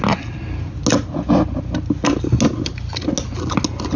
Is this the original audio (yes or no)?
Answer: yes